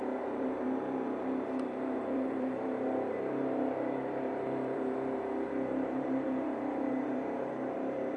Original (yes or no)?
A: no